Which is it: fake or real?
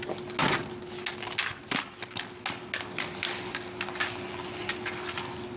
real